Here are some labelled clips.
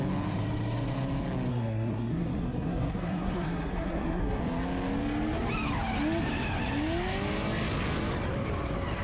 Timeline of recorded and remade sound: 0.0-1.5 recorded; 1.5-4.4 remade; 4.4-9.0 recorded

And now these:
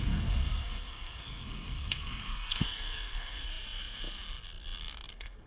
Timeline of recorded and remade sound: 0.0-3.5 remade; 3.5-5.1 recorded; 5.1-5.5 remade

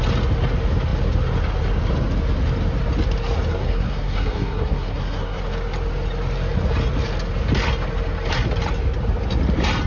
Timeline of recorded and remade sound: 0.0-3.5 recorded; 3.5-5.4 remade; 5.4-9.9 recorded

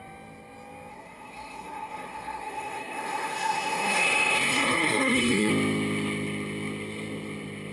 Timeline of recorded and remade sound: 0.0-0.9 recorded; 0.9-5.5 remade; 5.5-7.7 recorded